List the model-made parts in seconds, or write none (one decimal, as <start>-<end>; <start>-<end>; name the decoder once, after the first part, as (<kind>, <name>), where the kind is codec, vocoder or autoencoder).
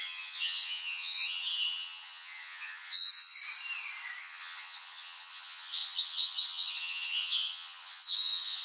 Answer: 0.0-3.4 (vocoder, HiFi-GAN); 4.2-8.6